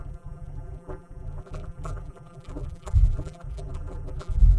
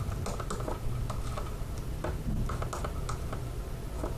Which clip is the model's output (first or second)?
first